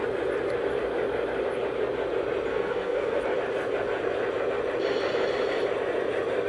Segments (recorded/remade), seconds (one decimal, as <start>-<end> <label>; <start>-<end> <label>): 0.0-2.5 recorded; 2.5-3.2 remade; 3.2-6.5 recorded